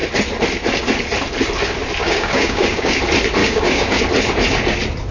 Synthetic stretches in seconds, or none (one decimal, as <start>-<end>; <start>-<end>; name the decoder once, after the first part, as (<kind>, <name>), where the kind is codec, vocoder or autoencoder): 2.0-3.0 (codec, DAC); 3.4-4.0